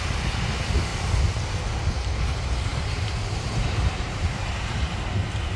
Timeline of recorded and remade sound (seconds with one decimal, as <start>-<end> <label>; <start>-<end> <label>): 0.0-0.9 recorded; 0.9-1.6 remade; 1.6-2.7 recorded; 2.7-4.8 remade; 4.8-5.6 recorded